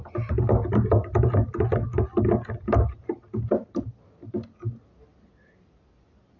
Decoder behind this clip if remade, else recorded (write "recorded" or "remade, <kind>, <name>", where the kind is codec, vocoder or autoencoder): recorded